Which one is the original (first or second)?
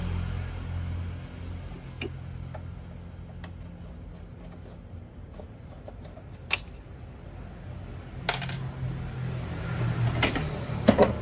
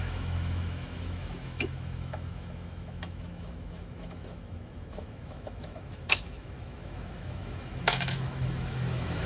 first